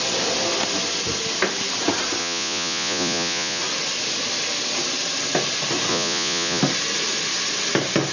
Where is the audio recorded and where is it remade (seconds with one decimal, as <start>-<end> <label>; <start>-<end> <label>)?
0.0-2.2 recorded; 2.2-3.6 remade; 3.6-5.9 recorded; 5.9-6.6 remade; 6.6-8.1 recorded